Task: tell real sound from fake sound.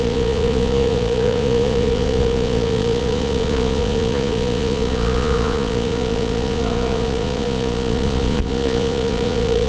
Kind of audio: fake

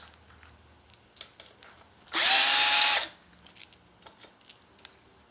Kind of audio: real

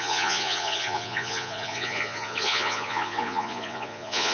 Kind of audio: fake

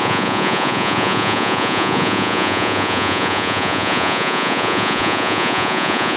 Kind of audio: fake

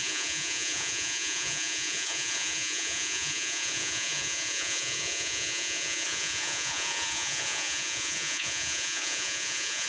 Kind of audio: fake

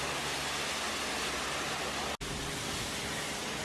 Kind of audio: real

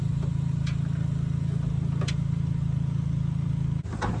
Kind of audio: real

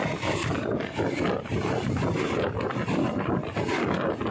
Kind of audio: real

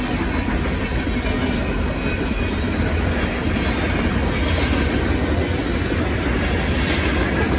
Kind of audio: real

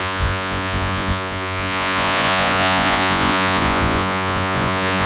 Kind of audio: fake